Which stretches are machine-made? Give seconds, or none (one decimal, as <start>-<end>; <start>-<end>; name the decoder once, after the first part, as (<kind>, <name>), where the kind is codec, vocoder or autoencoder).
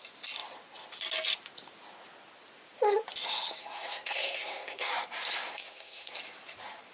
3.6-4.9 (codec, SNAC); 5.5-6.1